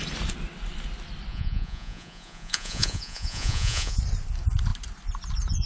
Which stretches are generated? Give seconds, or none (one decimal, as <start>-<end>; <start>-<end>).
1.3-4.0